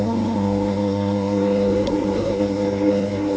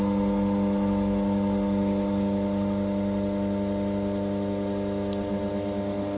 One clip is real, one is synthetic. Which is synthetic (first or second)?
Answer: first